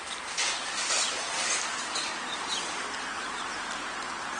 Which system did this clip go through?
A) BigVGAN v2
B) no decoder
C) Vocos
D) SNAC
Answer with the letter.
A